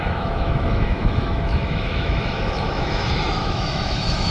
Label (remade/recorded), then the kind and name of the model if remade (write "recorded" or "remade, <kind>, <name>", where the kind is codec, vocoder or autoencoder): remade, autoencoder, DAC-VAE